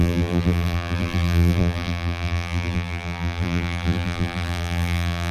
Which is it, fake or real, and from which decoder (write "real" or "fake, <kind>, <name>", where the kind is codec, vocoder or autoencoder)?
fake, vocoder, BigVGAN v2